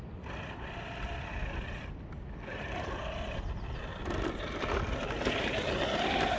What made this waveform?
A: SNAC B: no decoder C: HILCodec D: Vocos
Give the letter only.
B